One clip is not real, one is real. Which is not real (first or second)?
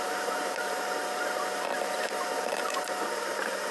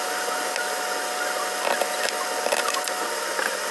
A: first